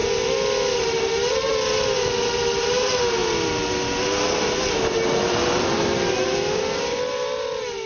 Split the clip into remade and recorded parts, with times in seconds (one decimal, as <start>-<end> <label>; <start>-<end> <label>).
0.0-7.9 recorded